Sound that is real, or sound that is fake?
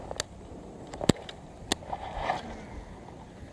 real